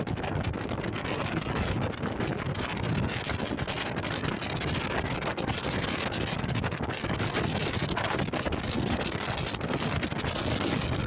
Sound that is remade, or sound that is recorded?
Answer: recorded